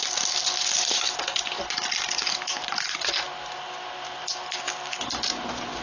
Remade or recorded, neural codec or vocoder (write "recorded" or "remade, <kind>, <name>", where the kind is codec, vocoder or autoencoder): recorded